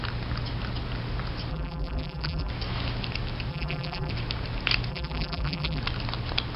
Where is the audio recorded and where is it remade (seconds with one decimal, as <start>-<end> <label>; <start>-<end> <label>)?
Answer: 0.0-1.5 recorded; 1.5-2.5 remade; 2.5-3.5 recorded; 3.5-4.1 remade; 4.1-4.9 recorded; 4.9-5.8 remade; 5.8-6.6 recorded